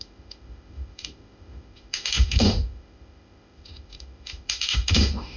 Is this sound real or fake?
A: fake